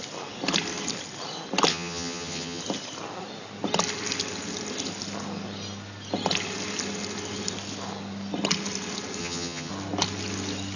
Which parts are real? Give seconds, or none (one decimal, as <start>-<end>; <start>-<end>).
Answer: 0.0-1.7; 2.6-9.2; 9.7-10.8